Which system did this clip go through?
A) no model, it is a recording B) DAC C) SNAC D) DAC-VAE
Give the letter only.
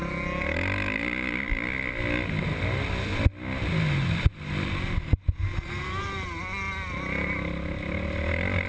A